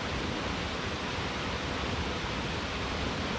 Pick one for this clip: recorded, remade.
recorded